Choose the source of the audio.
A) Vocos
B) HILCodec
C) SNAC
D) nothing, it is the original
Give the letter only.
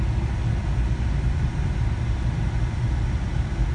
D